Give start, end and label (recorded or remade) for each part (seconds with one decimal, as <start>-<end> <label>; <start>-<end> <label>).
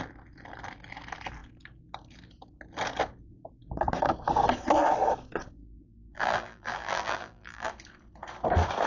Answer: 0.0-5.6 recorded; 5.6-7.7 remade; 7.7-8.9 recorded